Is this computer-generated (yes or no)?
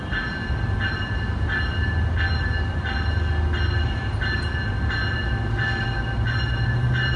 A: no